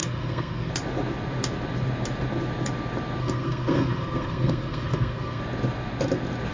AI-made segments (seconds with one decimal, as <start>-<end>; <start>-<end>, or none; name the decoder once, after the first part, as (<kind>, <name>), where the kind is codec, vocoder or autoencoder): 0.0-0.7 (codec, SNAC); 3.2-5.4